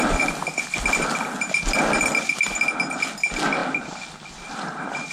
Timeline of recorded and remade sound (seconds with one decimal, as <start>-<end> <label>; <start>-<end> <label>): 0.0-5.1 recorded